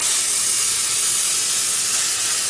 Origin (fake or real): real